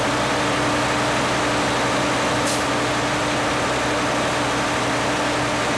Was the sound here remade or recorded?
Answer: recorded